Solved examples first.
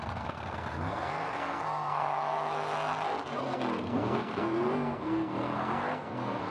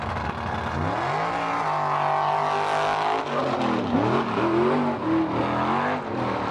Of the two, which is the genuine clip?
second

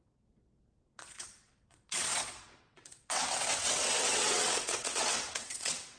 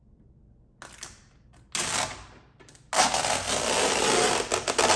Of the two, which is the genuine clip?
second